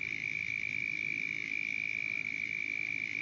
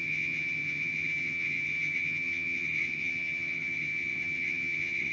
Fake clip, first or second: second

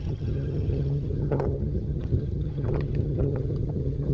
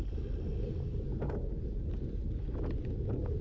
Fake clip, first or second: first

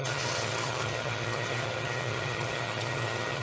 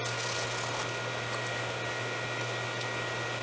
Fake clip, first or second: first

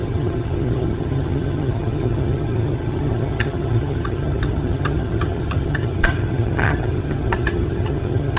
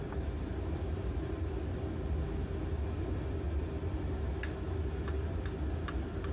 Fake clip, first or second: first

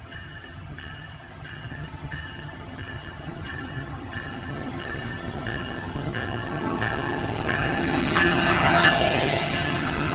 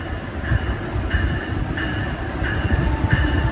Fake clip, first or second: first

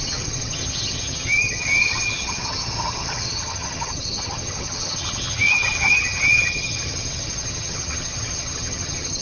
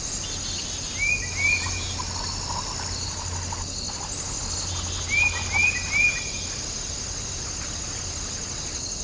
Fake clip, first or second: first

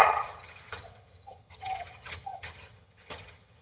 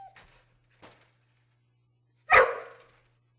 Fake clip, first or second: first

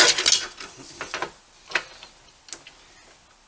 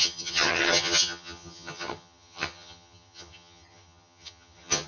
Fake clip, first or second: second